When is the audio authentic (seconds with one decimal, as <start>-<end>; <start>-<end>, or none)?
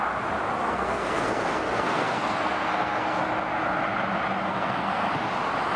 0.0-0.6; 3.2-4.5; 5.1-5.8